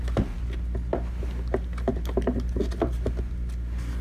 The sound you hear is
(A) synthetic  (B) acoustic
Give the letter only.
B